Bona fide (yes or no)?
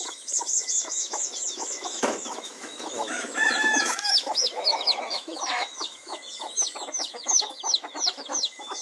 no